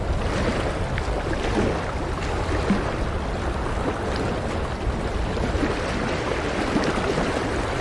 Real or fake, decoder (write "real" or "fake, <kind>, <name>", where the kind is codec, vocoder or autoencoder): real